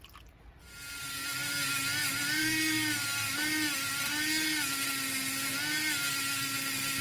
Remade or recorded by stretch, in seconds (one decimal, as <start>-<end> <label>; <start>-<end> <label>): 0.0-7.0 recorded